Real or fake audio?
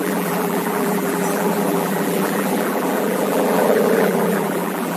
fake